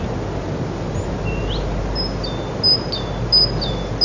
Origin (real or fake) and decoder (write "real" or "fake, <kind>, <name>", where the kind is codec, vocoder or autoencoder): real